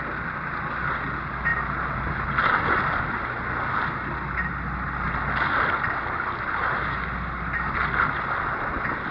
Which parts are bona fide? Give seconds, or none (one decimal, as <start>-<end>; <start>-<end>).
0.0-9.1

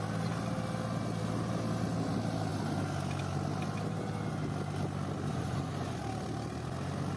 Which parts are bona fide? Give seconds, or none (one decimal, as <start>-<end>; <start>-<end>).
0.0-5.3; 6.0-7.2

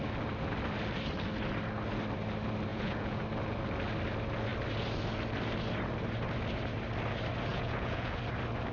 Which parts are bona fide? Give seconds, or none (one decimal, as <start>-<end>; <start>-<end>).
0.0-2.7; 3.2-7.5; 8.2-8.7

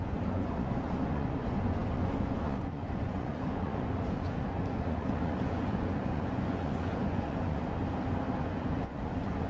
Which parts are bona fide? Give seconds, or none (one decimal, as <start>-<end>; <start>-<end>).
7.8-8.4

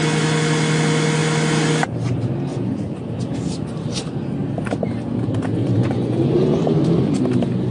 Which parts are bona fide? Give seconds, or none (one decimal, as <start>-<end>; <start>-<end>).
0.0-2.5; 3.0-5.6; 6.6-7.7

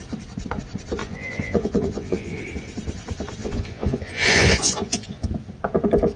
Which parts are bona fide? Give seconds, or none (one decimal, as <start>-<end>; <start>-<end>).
0.0-1.0; 2.4-3.4; 5.3-6.2